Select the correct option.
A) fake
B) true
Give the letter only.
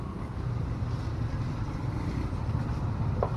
B